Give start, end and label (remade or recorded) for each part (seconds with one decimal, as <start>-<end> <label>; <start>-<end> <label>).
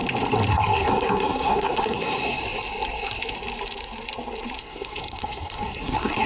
0.0-0.5 recorded; 0.5-2.4 remade; 2.4-4.6 recorded; 4.6-6.3 remade